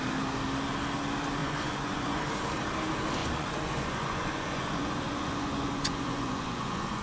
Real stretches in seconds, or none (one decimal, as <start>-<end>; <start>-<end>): 0.0-1.4; 2.2-3.2